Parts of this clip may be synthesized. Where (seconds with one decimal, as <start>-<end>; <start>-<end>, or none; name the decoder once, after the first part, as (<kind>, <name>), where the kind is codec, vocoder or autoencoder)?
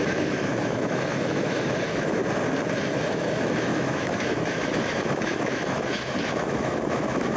0.0-2.2 (autoencoder, DAC-VAE); 3.1-7.4